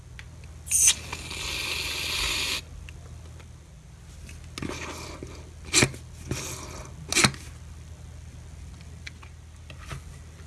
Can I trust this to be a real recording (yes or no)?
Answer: yes